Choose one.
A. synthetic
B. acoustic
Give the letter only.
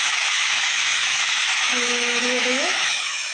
A